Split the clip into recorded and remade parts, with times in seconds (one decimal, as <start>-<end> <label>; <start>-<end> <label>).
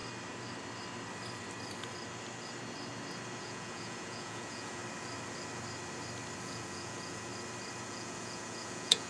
0.0-3.4 recorded; 3.4-4.8 remade; 4.8-6.4 recorded; 6.4-7.3 remade; 7.3-7.9 recorded; 7.9-9.1 remade